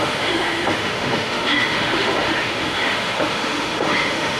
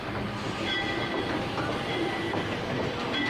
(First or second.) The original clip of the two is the second